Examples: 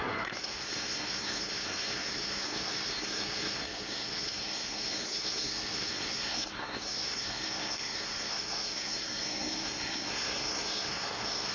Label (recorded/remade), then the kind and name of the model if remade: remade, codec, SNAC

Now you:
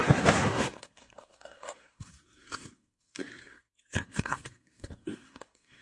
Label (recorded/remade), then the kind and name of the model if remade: remade, codec, SNAC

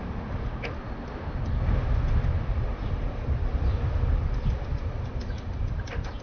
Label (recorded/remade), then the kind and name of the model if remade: recorded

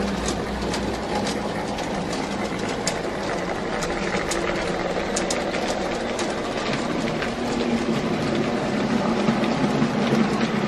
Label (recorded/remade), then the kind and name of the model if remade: recorded